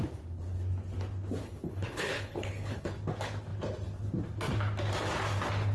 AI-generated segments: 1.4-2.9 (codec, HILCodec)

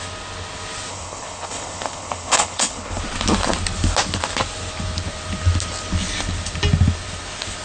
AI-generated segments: 0.9-3.0 (codec, HILCodec)